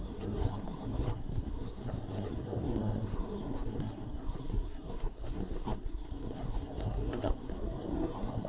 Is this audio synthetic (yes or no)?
yes